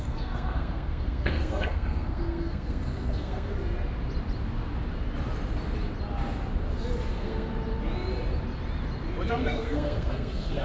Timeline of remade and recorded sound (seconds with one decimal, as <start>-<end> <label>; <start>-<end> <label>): 0.0-3.5 remade; 3.5-7.1 recorded; 7.1-7.5 remade; 7.5-9.3 recorded; 9.3-10.6 remade